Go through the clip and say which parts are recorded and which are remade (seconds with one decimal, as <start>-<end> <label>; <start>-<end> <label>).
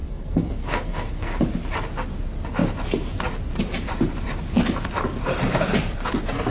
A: 0.0-1.4 remade; 1.4-6.5 recorded